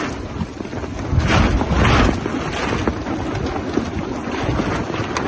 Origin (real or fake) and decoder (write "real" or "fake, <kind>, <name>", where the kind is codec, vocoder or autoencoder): real